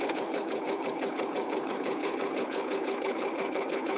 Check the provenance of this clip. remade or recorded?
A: remade